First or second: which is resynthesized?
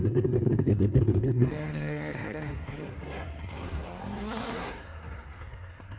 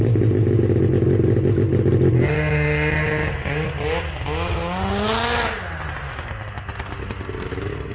first